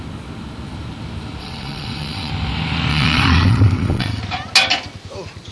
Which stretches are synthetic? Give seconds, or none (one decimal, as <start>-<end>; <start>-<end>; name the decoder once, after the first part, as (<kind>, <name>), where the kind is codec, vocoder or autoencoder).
1.4-2.3 (vocoder, WaveNeXt); 2.9-4.2